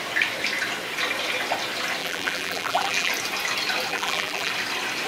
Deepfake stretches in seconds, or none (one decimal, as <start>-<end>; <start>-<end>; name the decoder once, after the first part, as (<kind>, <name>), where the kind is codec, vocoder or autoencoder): 2.0-3.1 (vocoder, BigVGAN v2); 3.9-4.5